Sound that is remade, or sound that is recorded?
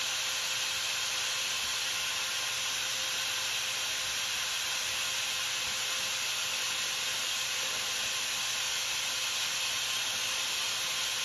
recorded